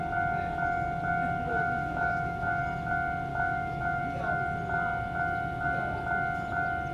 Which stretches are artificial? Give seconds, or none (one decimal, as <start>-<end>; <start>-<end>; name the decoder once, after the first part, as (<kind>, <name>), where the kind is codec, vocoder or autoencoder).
1.5-2.6 (autoencoder, DAC-VAE); 3.3-4.0